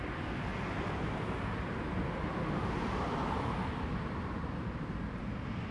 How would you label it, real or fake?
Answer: real